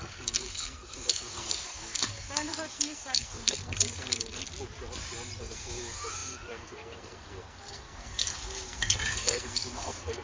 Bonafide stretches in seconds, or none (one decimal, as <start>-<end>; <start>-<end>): 4.5-5.4